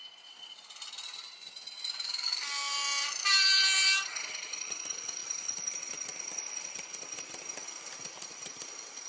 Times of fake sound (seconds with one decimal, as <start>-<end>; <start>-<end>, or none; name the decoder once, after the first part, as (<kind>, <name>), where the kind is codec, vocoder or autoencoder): none